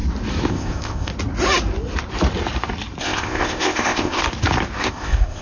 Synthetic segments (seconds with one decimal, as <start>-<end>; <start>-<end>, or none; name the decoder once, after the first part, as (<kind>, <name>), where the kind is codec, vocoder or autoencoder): 0.5-1.1 (codec, ZipCodec); 3.0-4.2; 4.8-5.4